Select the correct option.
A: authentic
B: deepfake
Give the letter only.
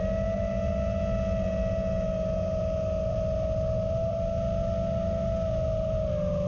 A